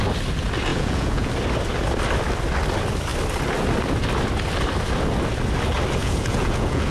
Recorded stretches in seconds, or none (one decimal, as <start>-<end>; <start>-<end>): 0.0-0.7; 1.3-6.0